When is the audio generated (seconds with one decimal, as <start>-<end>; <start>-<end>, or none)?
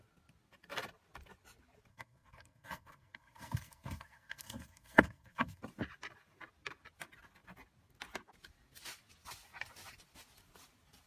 1.9-5.6